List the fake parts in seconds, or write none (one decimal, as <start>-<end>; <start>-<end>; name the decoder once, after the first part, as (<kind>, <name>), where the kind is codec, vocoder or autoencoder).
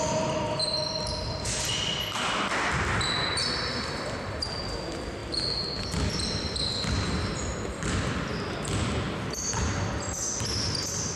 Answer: none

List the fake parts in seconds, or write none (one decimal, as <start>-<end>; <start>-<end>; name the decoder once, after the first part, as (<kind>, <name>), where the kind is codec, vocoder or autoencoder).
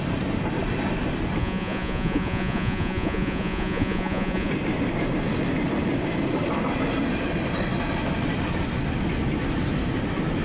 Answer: 1.4-4.5 (vocoder, Vocos)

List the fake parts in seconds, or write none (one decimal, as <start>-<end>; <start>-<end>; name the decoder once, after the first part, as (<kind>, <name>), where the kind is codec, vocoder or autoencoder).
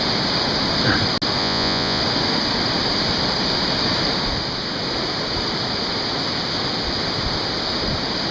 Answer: 1.4-2.0 (vocoder, Vocos)